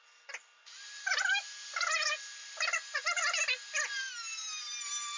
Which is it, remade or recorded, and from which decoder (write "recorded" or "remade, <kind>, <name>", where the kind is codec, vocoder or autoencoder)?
recorded